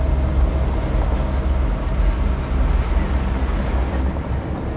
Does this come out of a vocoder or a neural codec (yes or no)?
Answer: no